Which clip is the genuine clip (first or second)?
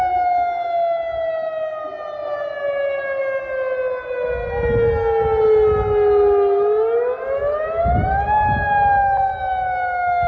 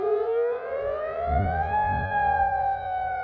first